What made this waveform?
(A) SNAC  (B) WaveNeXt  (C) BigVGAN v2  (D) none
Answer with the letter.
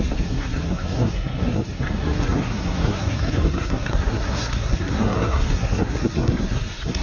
A